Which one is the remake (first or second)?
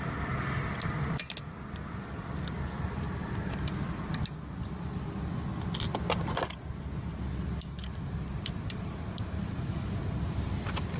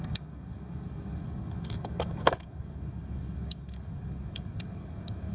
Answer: second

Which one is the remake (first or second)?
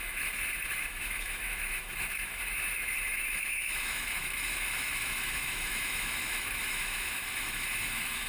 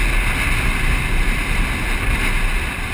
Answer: first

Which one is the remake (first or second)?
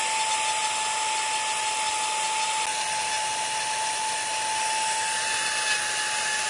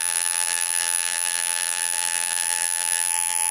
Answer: second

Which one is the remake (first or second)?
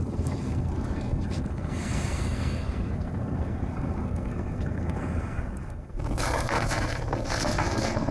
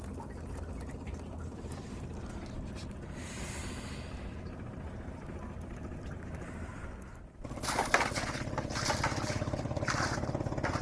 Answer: first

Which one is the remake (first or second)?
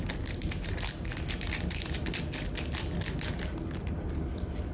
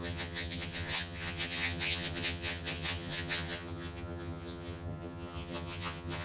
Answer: second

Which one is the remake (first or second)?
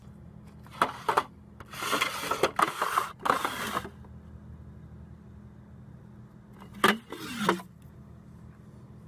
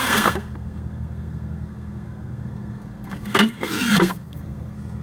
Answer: second